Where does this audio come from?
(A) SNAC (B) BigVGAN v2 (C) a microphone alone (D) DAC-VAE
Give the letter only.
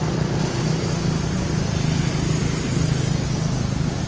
C